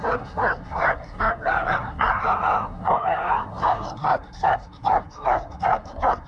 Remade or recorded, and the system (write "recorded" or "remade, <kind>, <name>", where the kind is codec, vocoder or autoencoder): remade, codec, SNAC